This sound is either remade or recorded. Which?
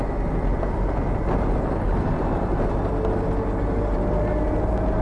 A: recorded